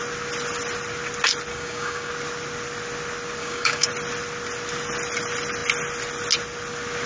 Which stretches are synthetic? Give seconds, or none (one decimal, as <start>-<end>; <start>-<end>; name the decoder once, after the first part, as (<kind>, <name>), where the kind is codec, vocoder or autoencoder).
1.5-2.1 (codec, DAC); 3.4-3.9

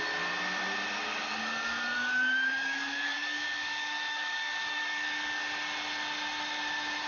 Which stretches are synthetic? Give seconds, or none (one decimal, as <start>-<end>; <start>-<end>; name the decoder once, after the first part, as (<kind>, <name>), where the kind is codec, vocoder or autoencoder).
1.1-5.4 (codec, DAC)

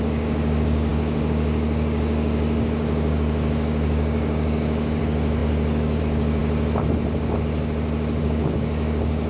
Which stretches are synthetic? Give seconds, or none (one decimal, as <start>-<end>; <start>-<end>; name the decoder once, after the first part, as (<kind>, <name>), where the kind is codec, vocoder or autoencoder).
0.0-6.4 (codec, DAC); 8.2-9.3